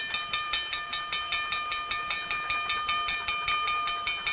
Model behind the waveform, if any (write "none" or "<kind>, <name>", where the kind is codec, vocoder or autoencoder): none